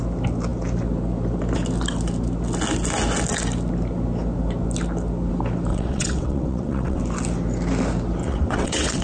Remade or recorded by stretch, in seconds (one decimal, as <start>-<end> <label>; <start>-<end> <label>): 0.0-5.7 recorded; 5.7-7.0 remade; 7.0-8.2 recorded; 8.2-9.0 remade